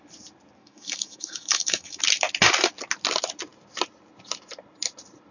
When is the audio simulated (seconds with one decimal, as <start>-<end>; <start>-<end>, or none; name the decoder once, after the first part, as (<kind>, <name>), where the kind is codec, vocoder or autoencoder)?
0.6-2.0 (autoencoder, DAC-VAE)